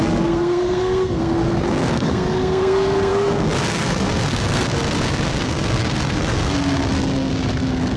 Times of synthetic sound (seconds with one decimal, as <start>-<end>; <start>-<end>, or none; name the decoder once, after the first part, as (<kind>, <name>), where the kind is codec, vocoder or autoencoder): 0.0-8.0 (codec, SNAC)